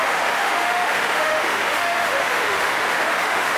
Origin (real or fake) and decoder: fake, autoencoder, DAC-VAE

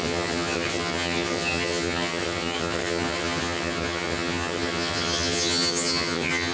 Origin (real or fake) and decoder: fake, vocoder, HiFi-GAN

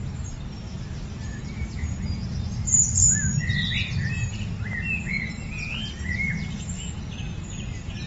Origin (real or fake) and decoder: real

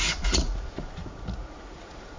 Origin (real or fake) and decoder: fake, vocoder, Vocos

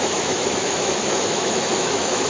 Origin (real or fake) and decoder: fake, autoencoder, DAC-VAE